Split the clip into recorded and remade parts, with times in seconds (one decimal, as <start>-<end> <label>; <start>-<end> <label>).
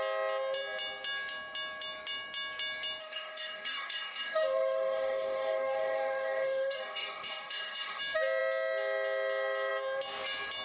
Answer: 0.0-3.0 recorded; 3.0-8.0 remade; 8.0-10.6 recorded